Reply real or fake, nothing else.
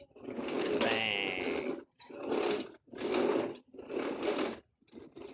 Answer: real